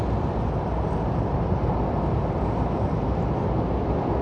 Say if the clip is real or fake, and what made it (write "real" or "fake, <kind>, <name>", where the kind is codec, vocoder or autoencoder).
real